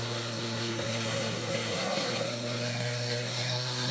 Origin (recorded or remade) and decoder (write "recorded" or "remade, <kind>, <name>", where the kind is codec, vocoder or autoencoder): remade, codec, SNAC